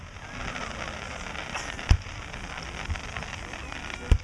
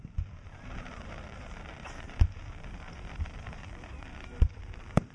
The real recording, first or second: first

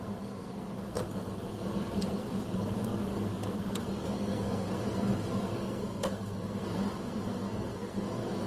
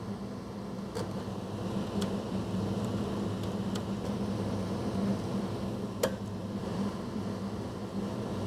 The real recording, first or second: second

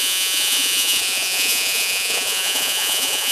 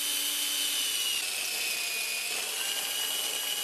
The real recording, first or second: second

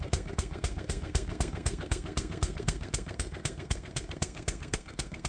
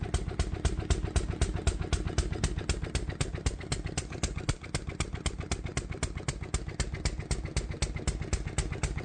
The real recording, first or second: second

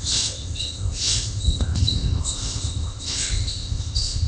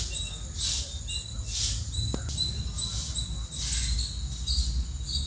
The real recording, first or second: second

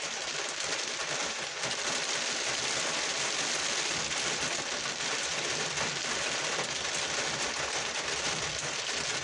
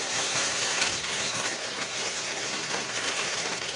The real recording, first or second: first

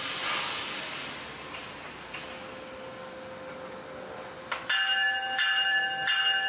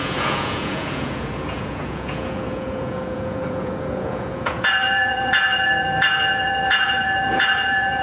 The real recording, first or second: first